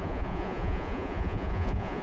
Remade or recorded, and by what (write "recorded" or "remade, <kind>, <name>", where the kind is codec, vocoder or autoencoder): remade, vocoder, Vocos